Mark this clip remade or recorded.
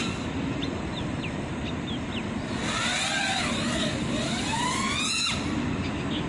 recorded